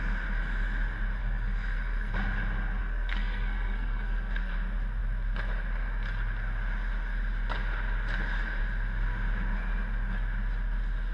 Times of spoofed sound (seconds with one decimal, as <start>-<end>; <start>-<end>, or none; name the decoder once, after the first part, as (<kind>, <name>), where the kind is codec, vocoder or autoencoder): 1.2-2.1 (codec, SNAC); 2.8-4.5